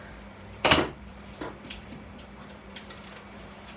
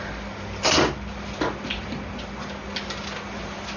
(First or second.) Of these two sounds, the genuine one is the second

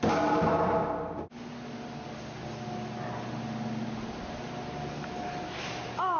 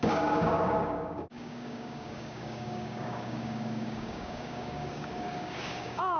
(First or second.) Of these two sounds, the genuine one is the first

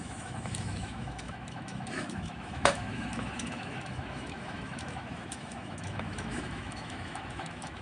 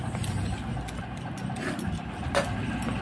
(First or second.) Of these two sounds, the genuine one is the second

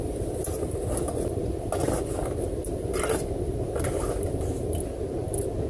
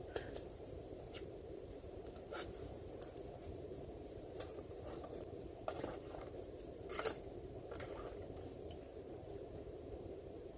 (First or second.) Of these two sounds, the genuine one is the first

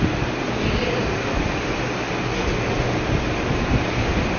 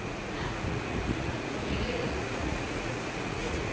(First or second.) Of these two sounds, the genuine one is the first